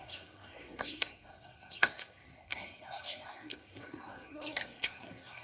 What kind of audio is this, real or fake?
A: fake